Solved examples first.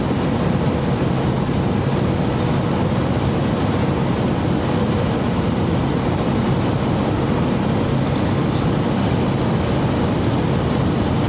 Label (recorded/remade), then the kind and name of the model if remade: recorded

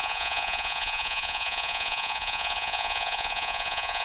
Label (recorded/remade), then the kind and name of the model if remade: remade, vocoder, Vocos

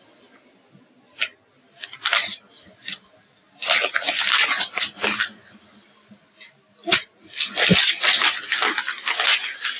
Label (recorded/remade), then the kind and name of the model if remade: recorded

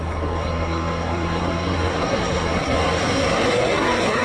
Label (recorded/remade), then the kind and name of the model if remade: remade, codec, SNAC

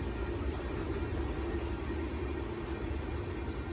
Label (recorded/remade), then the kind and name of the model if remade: recorded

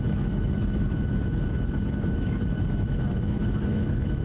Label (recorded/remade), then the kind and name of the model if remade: remade, autoencoder, DAC-VAE